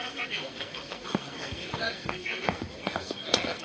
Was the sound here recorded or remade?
remade